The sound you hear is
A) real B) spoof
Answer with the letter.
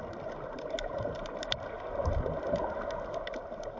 A